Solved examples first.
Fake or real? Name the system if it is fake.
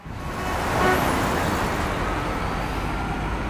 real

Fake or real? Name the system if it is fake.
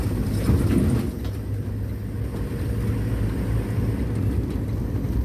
real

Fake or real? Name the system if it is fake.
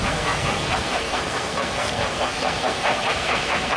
fake, codec, SNAC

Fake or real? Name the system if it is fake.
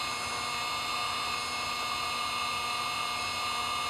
real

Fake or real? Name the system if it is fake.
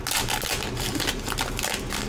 real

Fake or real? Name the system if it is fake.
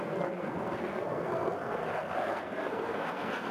fake, codec, SNAC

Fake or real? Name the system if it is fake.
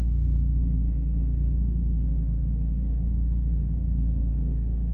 fake, codec, SNAC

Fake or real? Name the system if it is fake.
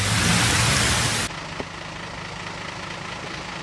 real